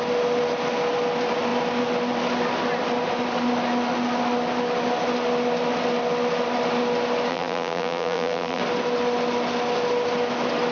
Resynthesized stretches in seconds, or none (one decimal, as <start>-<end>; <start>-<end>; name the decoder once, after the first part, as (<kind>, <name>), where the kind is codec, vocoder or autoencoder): 7.3-8.6 (vocoder, BigVGAN v2)